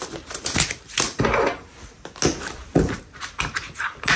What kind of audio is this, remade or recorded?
recorded